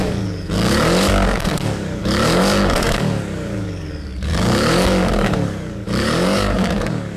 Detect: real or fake fake